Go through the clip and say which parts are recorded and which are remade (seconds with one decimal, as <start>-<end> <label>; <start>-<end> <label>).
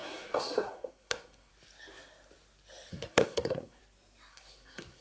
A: 0.0-1.5 remade; 1.5-2.9 recorded; 2.9-3.8 remade; 3.8-4.3 recorded; 4.3-5.0 remade